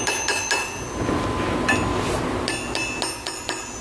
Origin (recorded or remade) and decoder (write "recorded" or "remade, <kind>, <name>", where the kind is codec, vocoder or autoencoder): recorded